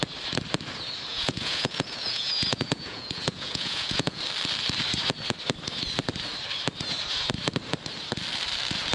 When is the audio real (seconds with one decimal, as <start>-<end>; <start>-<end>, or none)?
0.0-1.1; 4.2-8.9